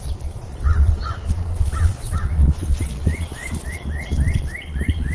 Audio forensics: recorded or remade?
remade